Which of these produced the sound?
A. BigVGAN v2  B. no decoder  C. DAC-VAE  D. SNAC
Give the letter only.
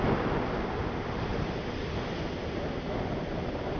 B